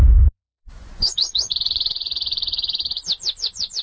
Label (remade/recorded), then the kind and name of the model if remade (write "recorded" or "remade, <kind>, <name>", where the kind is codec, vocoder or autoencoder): remade, vocoder, Vocos